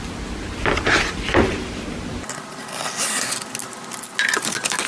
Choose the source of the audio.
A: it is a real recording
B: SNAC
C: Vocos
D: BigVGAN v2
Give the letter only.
A